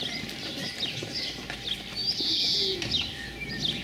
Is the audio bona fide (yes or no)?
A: yes